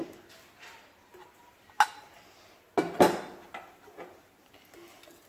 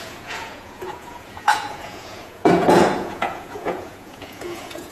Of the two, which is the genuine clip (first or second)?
first